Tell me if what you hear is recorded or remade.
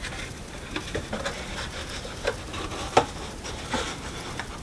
recorded